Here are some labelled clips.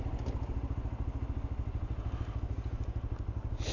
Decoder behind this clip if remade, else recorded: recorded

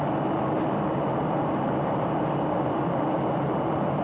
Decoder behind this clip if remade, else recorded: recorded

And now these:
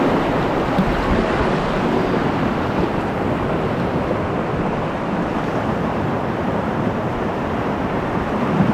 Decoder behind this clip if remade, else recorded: recorded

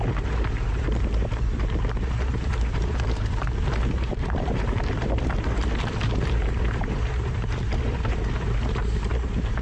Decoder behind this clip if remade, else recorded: remade, vocoder, BigVGAN v2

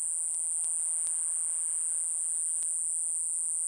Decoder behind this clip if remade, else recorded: recorded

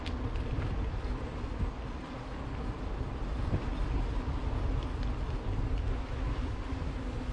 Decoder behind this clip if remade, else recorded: recorded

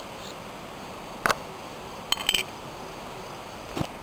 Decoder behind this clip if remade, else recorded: recorded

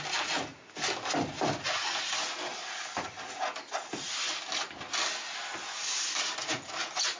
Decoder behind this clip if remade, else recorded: recorded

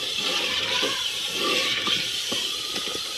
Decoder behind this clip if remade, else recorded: remade, vocoder, BigVGAN v2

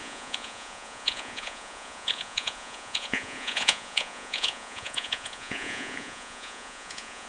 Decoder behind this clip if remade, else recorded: remade, vocoder, Vocos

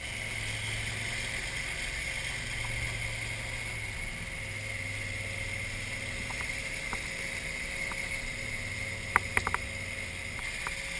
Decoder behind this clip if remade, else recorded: recorded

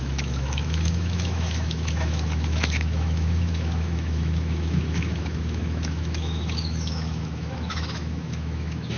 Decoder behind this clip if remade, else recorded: remade, autoencoder, DAC-VAE